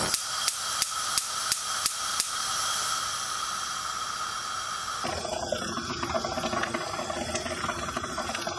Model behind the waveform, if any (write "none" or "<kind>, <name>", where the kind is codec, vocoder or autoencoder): none